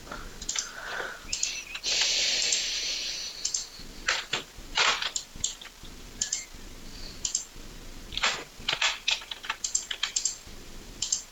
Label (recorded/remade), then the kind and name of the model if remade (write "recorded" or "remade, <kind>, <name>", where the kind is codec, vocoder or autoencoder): remade, vocoder, BigVGAN v2